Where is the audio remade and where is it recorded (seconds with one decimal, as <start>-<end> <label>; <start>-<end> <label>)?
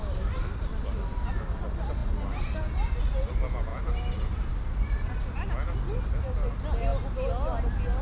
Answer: 0.0-0.5 remade; 0.5-3.7 recorded; 3.7-6.1 remade; 6.1-8.0 recorded